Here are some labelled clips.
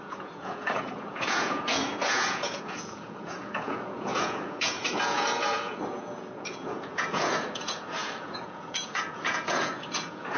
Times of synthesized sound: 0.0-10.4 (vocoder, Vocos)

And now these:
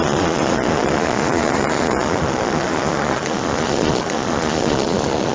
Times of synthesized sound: 0.0-5.3 (vocoder, Vocos)

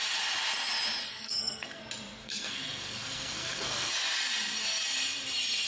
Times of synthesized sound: 1.0-1.8 (codec, SNAC); 2.2-3.9

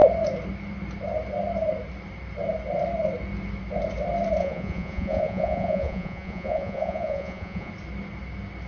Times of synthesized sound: 4.4-7.7 (vocoder, Vocos)